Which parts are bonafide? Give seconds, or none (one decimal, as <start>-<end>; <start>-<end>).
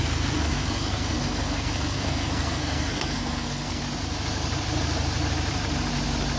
3.8-6.4